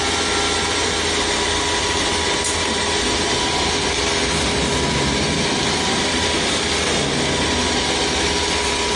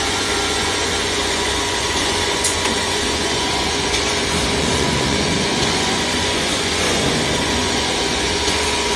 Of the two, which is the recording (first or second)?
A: first